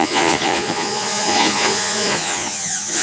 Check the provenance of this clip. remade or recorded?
remade